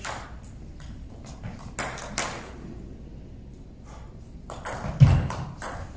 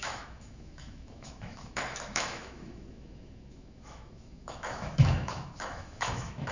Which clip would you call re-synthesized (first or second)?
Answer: second